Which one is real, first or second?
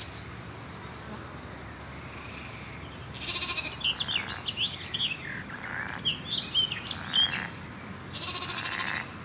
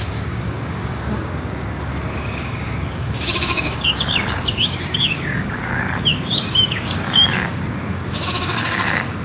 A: first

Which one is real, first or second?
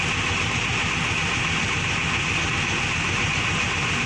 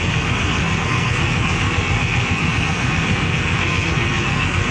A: first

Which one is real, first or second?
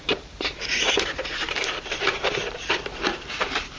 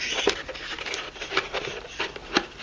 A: second